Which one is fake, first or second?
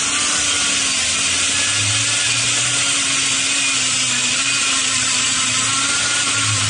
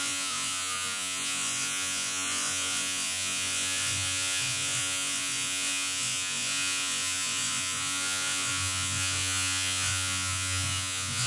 second